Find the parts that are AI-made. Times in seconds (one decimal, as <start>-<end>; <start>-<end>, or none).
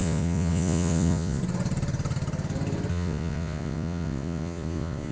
0.0-1.4; 2.9-5.1